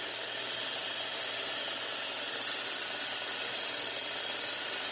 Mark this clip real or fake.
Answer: real